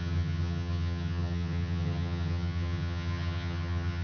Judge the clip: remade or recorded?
remade